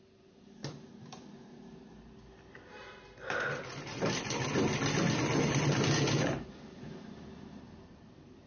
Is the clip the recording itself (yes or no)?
yes